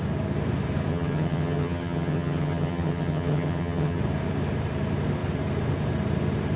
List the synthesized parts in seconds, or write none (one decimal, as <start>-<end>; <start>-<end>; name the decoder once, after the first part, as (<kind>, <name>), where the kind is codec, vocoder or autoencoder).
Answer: 0.9-4.0 (vocoder, HiFi-GAN)